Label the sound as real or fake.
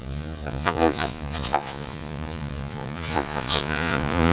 fake